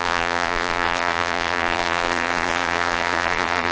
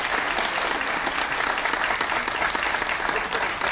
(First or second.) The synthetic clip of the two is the first